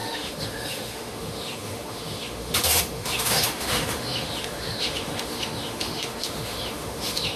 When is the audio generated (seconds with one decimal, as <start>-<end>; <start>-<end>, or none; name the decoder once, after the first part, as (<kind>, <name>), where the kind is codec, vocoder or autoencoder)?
0.0-7.4 (autoencoder, DAC-VAE)